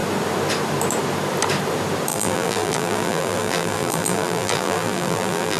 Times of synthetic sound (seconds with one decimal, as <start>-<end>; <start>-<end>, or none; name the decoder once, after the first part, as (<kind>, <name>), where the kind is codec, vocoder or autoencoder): 2.1-5.6 (vocoder, BigVGAN v2)